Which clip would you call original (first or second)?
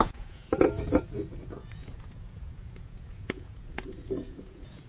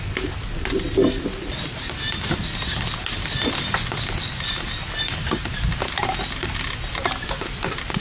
second